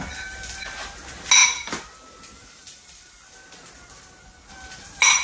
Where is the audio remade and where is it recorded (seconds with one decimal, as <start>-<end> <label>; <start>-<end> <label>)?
0.0-5.2 recorded